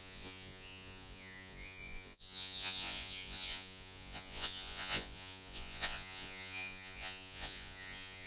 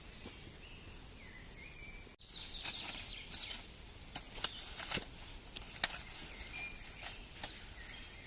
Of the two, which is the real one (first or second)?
second